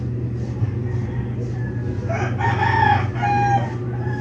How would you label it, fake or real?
real